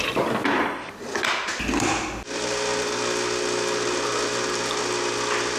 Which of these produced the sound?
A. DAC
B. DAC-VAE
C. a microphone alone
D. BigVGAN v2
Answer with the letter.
C